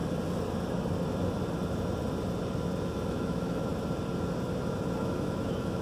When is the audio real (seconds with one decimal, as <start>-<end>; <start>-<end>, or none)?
0.0-3.1; 3.7-5.0